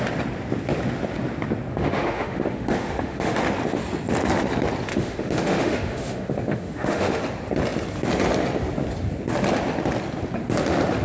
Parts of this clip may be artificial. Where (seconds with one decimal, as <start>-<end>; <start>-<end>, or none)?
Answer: 1.7-3.4; 4.9-7.2

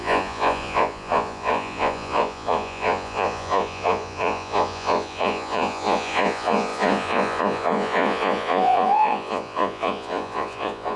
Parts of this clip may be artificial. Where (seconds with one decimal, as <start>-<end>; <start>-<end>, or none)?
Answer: 0.0-11.0

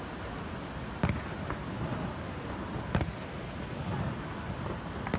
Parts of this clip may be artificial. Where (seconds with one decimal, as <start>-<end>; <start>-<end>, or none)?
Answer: none

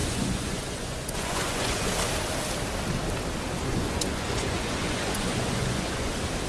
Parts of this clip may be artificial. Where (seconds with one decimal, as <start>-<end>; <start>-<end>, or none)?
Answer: 0.0-1.9; 3.7-6.1

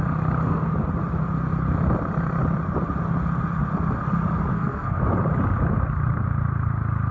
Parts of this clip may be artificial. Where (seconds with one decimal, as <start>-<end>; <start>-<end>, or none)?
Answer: 4.5-5.0